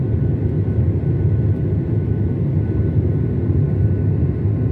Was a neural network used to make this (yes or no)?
no